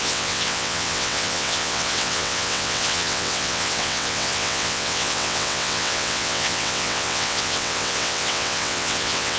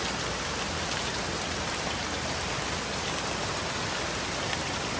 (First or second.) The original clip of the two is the second